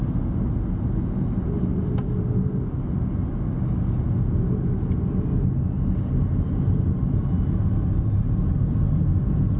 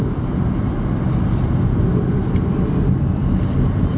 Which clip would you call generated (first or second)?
second